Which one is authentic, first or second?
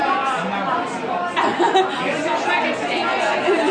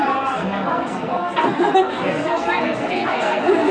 first